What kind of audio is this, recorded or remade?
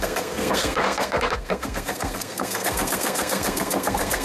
remade